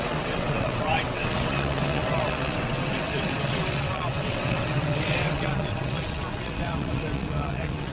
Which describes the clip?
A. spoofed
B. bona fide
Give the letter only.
A